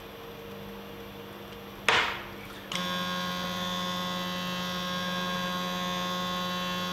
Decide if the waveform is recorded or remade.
recorded